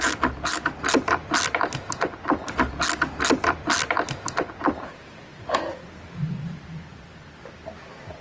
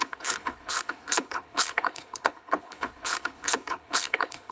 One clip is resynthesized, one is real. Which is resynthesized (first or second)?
second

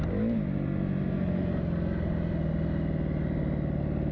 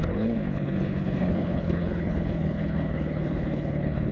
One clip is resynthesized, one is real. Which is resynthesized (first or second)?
second